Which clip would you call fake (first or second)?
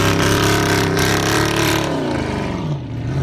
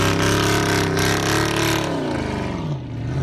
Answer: first